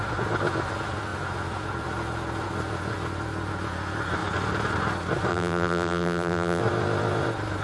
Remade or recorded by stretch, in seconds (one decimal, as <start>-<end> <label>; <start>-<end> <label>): 0.0-5.3 recorded; 5.3-6.6 remade; 6.6-7.6 recorded